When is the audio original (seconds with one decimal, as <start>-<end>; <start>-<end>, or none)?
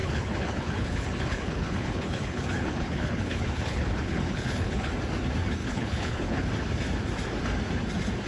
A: 4.9-5.6; 6.5-8.3